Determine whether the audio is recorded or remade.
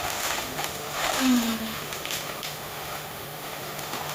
remade